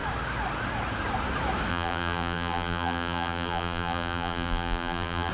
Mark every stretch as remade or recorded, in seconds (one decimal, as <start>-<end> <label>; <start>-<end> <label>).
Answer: 0.0-1.7 recorded; 1.7-5.3 remade